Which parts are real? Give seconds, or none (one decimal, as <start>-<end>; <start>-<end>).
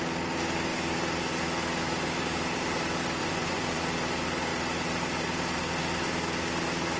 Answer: 0.0-3.2; 3.8-7.0